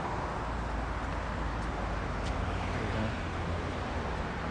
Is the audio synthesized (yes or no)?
no